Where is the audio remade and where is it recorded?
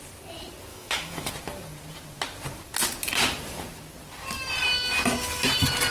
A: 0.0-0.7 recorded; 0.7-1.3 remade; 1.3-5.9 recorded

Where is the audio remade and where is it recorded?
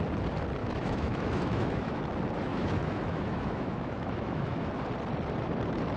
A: 0.0-0.6 recorded; 0.6-2.0 remade; 2.0-2.5 recorded; 2.5-4.7 remade; 4.7-6.0 recorded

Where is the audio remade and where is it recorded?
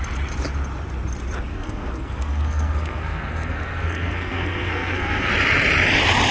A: 0.0-1.5 recorded; 1.5-5.3 remade; 5.3-6.3 recorded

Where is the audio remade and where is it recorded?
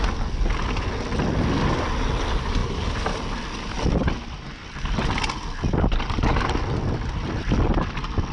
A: 0.0-8.3 recorded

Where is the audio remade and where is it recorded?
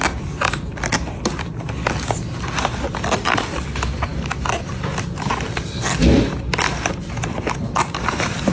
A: 0.0-8.5 recorded